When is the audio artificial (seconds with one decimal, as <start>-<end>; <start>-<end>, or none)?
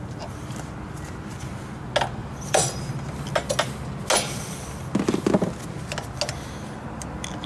2.2-2.8